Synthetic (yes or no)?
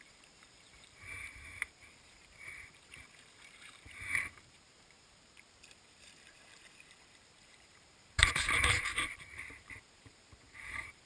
yes